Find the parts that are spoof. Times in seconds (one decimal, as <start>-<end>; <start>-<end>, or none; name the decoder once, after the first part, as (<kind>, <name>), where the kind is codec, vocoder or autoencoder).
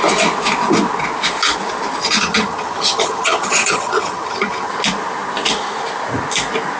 2.0-4.7 (vocoder, HiFi-GAN)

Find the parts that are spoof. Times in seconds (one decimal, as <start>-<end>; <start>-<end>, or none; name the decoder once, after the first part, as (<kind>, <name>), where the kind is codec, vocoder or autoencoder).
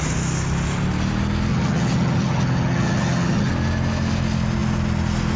1.5-3.5 (vocoder, HiFi-GAN)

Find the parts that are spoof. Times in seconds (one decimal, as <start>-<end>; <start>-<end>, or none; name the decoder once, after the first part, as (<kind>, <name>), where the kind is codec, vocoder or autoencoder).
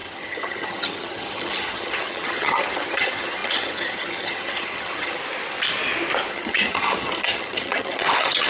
0.0-5.2 (vocoder, HiFi-GAN); 6.3-8.5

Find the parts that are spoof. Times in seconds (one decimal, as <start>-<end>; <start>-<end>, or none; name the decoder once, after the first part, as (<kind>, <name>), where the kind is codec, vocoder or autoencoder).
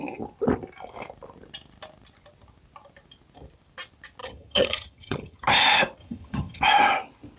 4.2-5.4 (vocoder, HiFi-GAN); 6.0-6.6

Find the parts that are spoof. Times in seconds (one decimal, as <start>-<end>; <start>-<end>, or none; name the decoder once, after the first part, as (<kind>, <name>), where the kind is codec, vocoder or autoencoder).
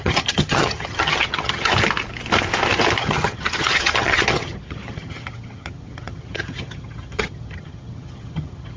0.0-1.7 (vocoder, HiFi-GAN); 3.0-8.8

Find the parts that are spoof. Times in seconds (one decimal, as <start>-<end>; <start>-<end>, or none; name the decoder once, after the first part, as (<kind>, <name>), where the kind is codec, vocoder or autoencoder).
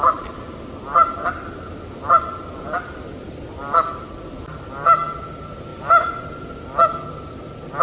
none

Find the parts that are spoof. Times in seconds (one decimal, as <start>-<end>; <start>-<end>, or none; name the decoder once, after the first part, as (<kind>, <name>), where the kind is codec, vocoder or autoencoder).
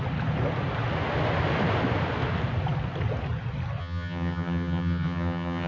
3.8-5.7 (vocoder, HiFi-GAN)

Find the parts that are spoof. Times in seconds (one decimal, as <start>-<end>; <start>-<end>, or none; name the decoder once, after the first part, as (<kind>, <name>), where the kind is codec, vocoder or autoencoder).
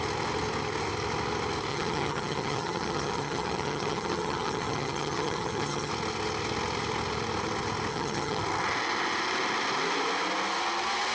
1.7-5.9 (vocoder, HiFi-GAN); 7.9-8.4